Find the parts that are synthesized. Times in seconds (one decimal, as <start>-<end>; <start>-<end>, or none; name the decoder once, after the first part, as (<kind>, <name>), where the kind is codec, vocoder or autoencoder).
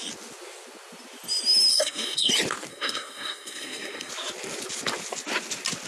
1.7-2.3 (codec, SNAC); 2.7-4.1